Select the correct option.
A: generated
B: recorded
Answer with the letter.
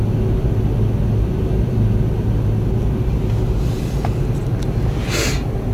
B